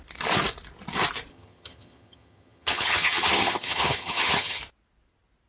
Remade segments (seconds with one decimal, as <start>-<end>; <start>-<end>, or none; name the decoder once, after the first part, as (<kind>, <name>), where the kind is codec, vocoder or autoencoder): 1.3-4.6 (vocoder, HiFi-GAN)

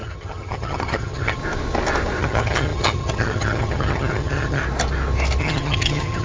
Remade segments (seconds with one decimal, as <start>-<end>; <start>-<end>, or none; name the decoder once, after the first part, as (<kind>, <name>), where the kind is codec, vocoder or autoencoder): 0.0-1.4 (vocoder, HiFi-GAN); 2.2-4.6; 5.4-6.2